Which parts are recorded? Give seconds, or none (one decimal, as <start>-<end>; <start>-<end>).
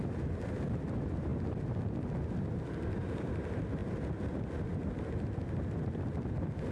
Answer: 0.0-6.7